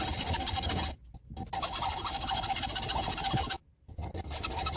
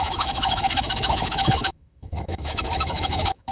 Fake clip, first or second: second